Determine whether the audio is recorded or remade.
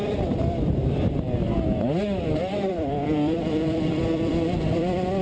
remade